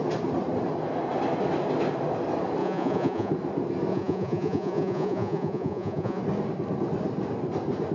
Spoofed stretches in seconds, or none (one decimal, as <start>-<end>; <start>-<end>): 2.6-3.3; 3.9-6.2